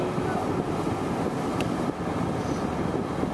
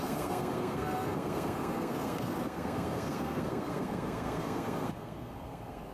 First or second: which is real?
first